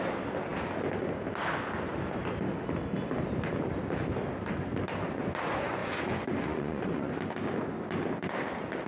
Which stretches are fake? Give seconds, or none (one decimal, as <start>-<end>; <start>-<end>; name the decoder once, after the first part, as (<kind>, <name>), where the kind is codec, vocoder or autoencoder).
5.8-7.1 (vocoder, Vocos)